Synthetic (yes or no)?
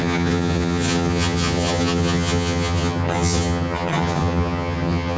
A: yes